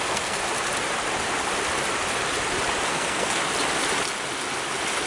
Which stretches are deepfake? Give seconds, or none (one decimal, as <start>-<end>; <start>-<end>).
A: 0.0-0.4; 2.9-3.4